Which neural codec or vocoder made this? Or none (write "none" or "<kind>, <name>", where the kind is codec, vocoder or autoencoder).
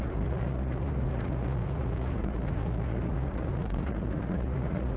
vocoder, Vocos